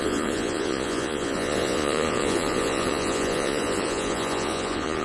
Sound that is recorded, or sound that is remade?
remade